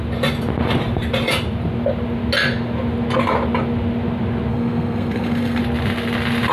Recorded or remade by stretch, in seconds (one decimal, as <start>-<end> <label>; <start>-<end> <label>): 0.0-4.5 recorded; 4.5-5.6 remade; 5.6-6.5 recorded